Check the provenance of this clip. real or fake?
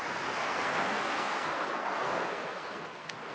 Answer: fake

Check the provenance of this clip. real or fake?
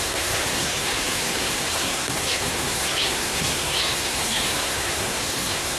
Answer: fake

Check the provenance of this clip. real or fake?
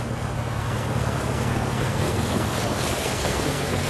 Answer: fake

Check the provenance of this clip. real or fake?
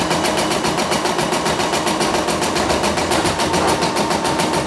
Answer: real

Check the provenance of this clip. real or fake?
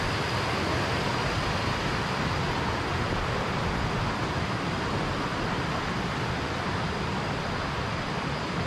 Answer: real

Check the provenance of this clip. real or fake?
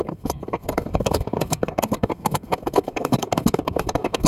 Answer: fake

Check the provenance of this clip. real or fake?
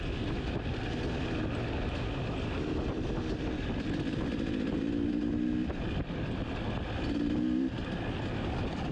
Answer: real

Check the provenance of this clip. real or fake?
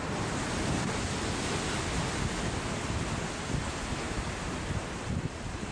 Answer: real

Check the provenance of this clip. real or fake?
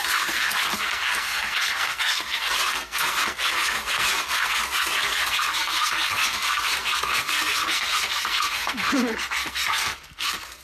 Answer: fake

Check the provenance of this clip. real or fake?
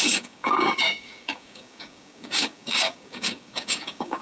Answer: fake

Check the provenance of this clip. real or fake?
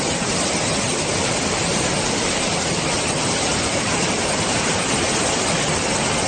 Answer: real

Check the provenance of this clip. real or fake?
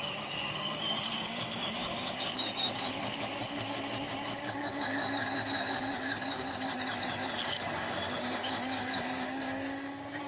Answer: fake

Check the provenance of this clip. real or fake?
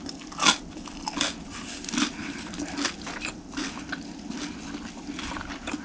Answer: real